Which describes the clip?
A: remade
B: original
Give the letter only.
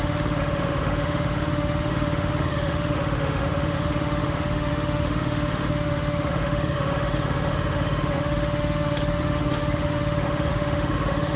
A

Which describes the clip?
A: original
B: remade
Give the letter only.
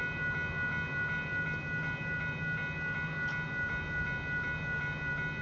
A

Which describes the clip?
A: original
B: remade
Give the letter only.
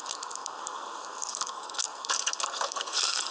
B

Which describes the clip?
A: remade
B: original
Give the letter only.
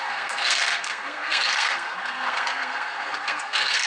A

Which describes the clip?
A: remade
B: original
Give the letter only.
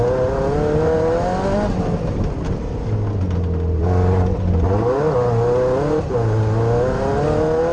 B